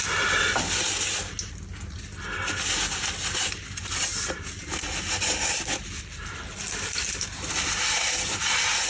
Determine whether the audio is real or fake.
real